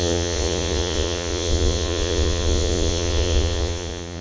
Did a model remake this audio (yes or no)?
yes